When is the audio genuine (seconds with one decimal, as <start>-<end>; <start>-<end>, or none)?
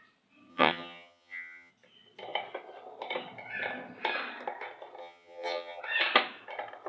0.0-0.5; 1.7-5.0; 5.8-6.9